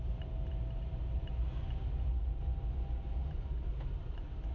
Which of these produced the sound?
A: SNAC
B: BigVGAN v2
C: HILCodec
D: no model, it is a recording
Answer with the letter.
D